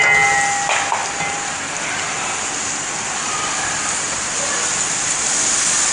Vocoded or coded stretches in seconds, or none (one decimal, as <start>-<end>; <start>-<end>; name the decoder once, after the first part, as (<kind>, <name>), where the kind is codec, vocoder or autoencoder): 1.0-4.5 (vocoder, BigVGAN v2)